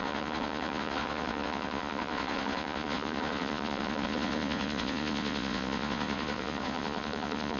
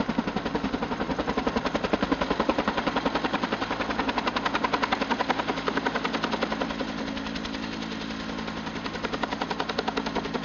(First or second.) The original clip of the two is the second